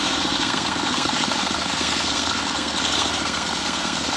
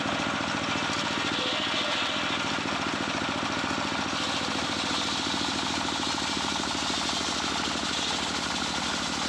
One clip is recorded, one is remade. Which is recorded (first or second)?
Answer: second